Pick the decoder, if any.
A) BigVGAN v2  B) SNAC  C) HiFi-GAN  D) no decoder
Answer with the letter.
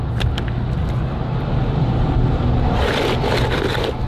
D